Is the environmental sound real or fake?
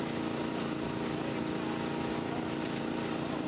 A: real